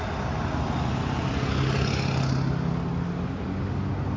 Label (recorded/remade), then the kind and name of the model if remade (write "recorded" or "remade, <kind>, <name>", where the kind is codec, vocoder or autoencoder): recorded